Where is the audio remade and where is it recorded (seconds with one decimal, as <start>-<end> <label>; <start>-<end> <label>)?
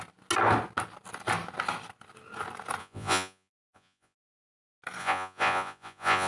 0.0-2.8 recorded; 2.8-4.5 remade; 4.5-5.0 recorded; 5.0-6.3 remade